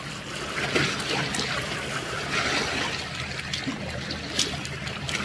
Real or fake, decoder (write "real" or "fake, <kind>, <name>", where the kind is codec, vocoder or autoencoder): real